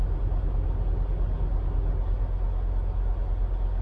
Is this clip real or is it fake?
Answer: real